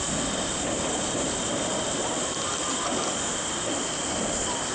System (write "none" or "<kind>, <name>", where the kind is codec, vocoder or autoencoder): vocoder, BigVGAN v2